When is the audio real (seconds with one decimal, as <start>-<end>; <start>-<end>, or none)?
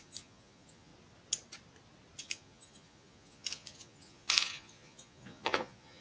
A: 0.9-2.2